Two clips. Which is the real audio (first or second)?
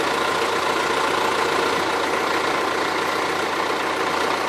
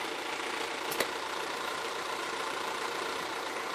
first